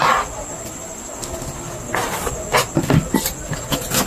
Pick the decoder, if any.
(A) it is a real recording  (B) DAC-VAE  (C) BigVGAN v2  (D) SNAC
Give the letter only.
A